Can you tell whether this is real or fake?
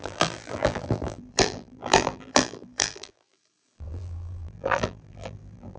fake